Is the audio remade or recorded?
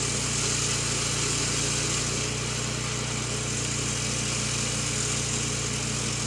recorded